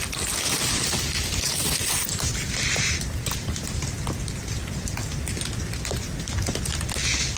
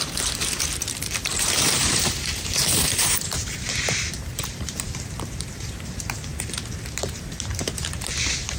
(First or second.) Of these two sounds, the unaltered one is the first